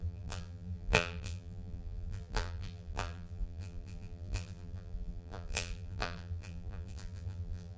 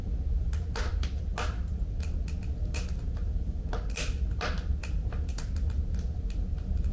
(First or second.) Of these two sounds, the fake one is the first